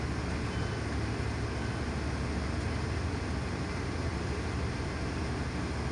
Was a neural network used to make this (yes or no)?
no